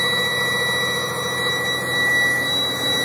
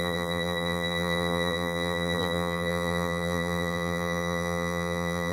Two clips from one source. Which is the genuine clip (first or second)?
first